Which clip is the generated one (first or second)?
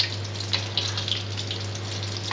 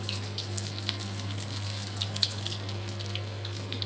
second